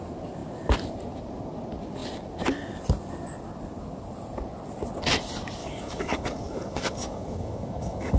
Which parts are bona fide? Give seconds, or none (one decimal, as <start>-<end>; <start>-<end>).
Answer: 0.0-5.6

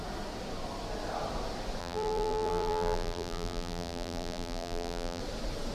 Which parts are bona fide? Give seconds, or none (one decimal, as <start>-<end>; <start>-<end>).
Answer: 0.0-1.8; 5.2-5.7

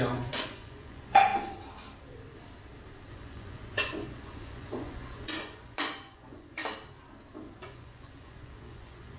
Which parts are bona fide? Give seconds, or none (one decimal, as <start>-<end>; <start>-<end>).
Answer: 1.3-3.1; 6.6-7.4